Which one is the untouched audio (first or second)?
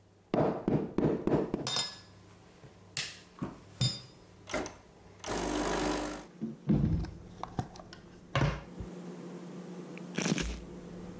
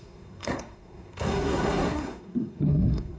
first